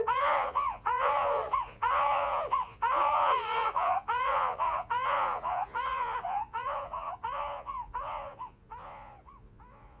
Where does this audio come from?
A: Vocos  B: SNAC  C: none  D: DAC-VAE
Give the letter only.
A